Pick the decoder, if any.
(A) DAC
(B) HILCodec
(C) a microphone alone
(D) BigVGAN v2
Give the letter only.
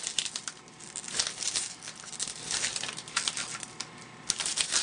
C